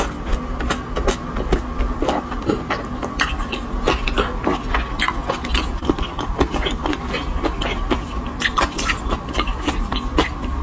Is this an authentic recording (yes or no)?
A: yes